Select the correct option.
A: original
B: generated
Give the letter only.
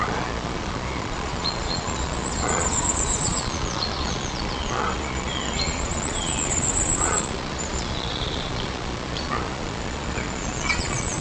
B